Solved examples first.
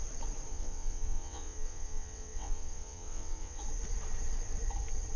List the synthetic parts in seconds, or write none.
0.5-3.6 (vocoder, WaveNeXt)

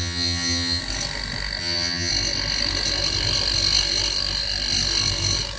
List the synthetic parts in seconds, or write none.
0.0-0.8 (vocoder, HiFi-GAN); 1.6-2.1

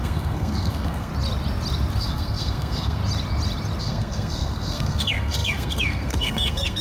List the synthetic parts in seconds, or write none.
0.0-1.1 (codec, SNAC); 2.0-3.0; 3.8-6.8

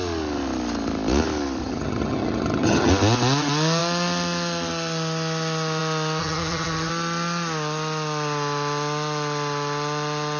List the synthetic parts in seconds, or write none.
1.6-2.9 (vocoder, HiFi-GAN); 6.2-6.9

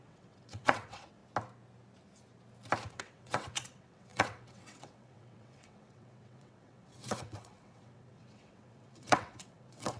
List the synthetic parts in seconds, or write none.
0.0-1.2 (vocoder, WaveNeXt); 2.9-10.0

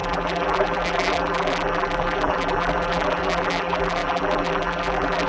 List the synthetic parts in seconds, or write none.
0.0-5.3 (vocoder, BigVGAN v2)